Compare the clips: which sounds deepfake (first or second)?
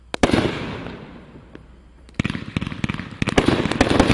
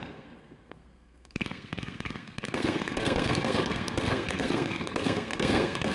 second